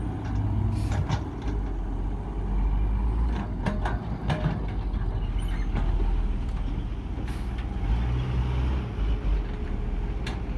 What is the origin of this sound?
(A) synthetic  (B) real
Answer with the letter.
B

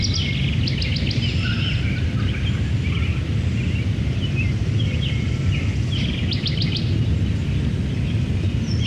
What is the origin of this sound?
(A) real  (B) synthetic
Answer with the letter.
A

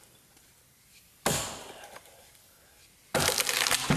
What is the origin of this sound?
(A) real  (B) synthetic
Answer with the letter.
A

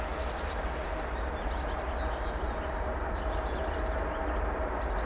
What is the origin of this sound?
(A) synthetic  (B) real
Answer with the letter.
B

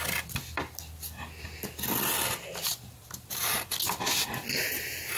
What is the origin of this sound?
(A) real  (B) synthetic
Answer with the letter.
A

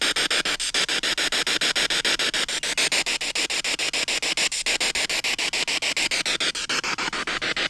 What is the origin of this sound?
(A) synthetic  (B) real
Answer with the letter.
B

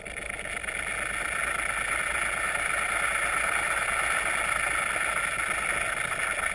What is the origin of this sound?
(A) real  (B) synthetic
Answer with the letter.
A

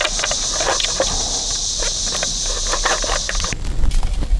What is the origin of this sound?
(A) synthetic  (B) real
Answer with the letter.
B